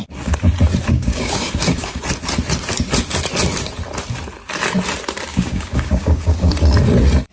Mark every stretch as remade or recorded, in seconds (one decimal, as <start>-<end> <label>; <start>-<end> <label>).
0.0-0.9 recorded; 0.9-2.0 remade; 2.0-5.3 recorded; 5.3-6.5 remade; 6.5-7.3 recorded